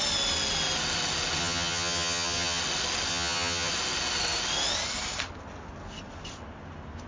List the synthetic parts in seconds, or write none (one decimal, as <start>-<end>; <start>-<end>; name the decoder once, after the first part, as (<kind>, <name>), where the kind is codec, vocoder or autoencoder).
1.4-2.6 (vocoder, HiFi-GAN); 3.1-3.7